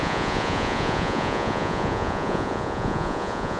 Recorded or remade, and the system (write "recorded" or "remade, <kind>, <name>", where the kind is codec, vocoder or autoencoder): remade, vocoder, Vocos